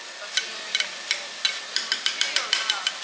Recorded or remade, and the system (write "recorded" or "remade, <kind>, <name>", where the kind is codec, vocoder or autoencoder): recorded